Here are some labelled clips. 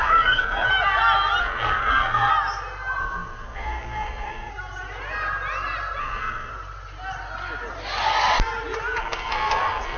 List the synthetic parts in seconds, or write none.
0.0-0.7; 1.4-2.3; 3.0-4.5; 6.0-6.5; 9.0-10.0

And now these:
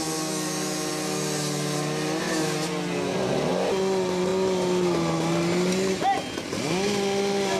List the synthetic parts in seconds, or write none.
none

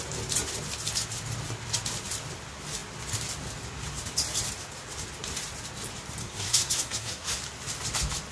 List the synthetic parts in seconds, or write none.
6.2-7.4

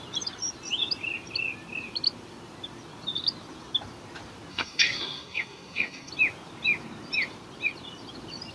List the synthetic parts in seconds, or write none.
4.5-6.1